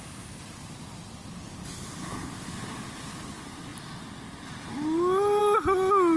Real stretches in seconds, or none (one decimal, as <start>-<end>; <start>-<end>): 0.0-6.2